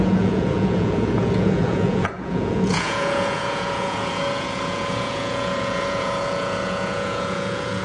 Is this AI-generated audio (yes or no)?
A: yes